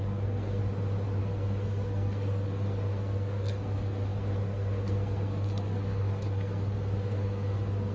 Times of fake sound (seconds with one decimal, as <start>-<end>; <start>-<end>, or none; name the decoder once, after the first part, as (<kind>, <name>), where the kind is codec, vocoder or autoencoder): 0.0-0.6 (codec, SNAC); 1.2-7.9